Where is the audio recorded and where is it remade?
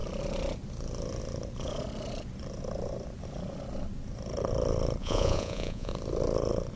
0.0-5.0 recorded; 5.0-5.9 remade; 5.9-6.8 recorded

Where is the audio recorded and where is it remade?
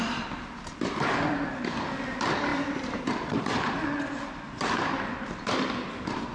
0.0-2.5 recorded; 2.5-3.8 remade; 3.8-6.3 recorded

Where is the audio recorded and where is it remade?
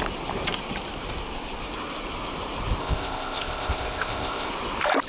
0.0-2.8 recorded; 2.8-4.5 remade; 4.5-5.1 recorded